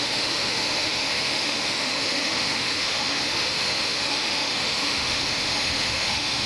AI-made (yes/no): yes